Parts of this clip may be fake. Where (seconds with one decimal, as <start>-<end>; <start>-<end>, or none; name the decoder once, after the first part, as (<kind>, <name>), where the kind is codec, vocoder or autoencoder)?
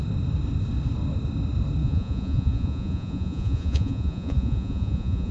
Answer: 1.8-5.3 (vocoder, Vocos)